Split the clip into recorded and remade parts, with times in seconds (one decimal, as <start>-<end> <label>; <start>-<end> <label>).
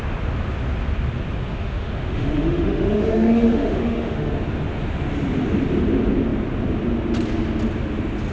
0.0-1.5 recorded; 1.5-4.3 remade; 4.3-8.3 recorded